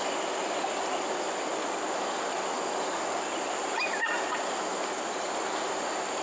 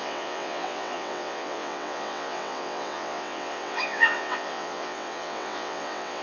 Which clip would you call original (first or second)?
first